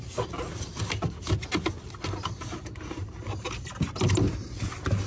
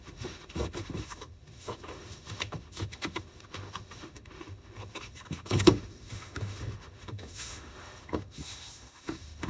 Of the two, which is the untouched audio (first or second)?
first